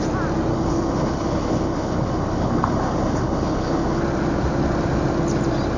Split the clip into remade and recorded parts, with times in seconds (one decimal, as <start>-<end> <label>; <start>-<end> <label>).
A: 0.0-0.5 recorded; 0.5-4.0 remade; 4.0-5.8 recorded